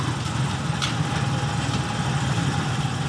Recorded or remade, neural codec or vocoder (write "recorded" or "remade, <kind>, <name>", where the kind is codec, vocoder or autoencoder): recorded